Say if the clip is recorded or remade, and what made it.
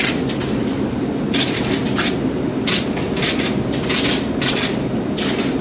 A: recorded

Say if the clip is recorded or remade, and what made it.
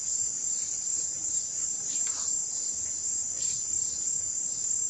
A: recorded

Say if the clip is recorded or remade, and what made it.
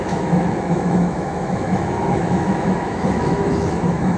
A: remade, autoencoder, DAC-VAE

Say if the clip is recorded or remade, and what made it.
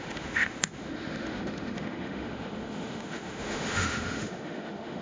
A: remade, autoencoder, DAC-VAE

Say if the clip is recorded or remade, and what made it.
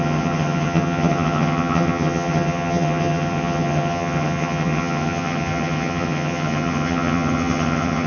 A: remade, vocoder, HiFi-GAN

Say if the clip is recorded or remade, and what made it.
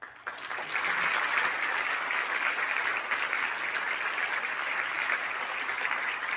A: recorded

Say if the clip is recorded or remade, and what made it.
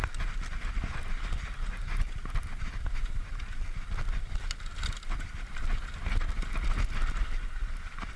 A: recorded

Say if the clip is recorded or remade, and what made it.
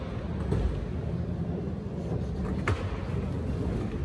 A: recorded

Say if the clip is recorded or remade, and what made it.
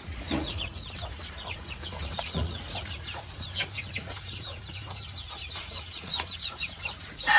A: remade, vocoder, Vocos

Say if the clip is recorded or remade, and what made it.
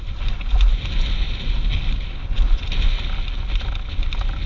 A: recorded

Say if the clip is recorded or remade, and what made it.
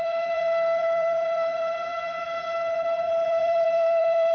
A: remade, vocoder, BigVGAN v2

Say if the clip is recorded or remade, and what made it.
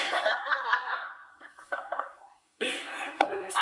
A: remade, codec, SNAC